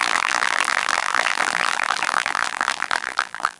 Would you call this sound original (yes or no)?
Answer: no